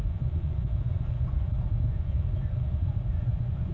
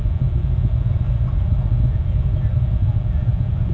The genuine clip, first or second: second